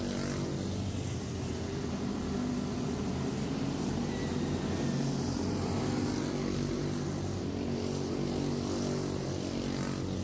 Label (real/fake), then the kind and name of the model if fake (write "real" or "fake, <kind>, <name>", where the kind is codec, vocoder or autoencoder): real